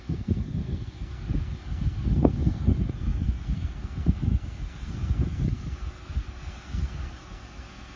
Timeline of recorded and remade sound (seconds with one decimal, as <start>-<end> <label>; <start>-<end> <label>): 0.0-8.0 remade